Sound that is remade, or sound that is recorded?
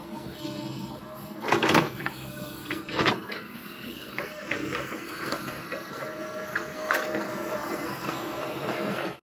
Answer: remade